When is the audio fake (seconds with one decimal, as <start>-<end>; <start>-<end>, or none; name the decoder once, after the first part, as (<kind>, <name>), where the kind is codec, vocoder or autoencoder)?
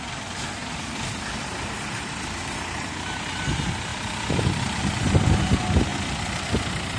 0.6-2.9 (vocoder, BigVGAN v2); 3.9-4.8; 5.9-7.0